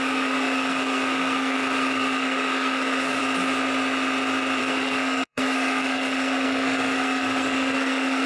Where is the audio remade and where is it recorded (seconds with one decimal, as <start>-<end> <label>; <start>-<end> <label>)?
0.0-3.2 remade; 3.2-4.6 recorded; 4.6-8.3 remade